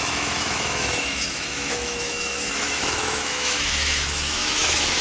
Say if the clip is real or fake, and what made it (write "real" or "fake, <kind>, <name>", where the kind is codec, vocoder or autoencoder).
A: fake, autoencoder, DAC-VAE